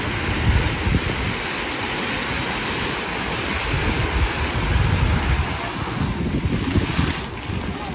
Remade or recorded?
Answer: recorded